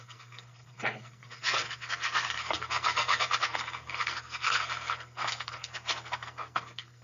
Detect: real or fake fake